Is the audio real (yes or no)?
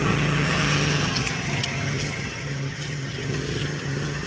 no